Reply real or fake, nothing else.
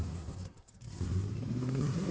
fake